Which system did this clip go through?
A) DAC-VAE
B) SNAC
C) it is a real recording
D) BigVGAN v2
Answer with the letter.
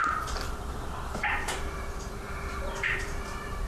D